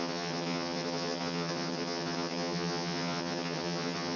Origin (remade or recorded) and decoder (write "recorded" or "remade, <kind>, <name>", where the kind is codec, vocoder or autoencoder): remade, vocoder, HiFi-GAN